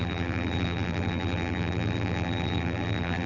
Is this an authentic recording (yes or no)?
no